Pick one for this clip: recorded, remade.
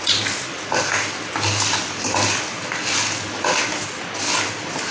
recorded